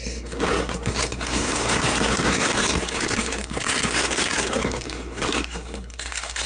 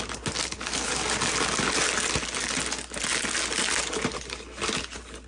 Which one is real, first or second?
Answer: second